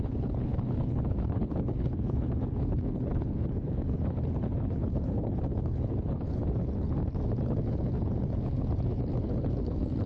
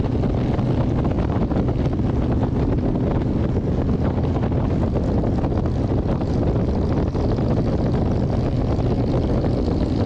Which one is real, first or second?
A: second